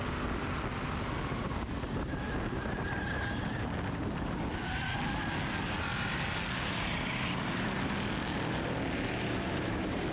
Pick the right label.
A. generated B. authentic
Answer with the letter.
B